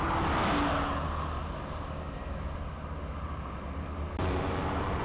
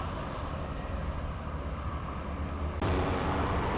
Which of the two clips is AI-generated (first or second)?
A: second